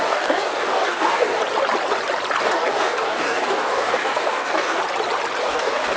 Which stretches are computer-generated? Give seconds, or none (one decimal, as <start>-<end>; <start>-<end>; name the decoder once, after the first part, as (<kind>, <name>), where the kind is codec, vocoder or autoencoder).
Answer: 0.0-1.4 (codec, DAC); 2.4-4.8; 5.4-6.0